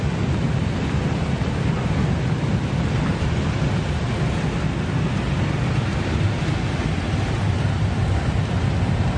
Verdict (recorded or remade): recorded